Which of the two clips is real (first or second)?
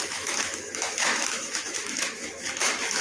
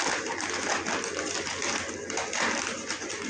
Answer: second